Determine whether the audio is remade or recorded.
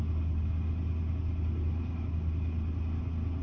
recorded